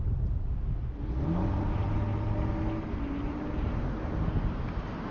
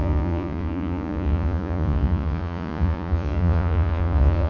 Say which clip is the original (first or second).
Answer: first